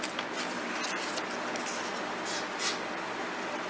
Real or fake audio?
real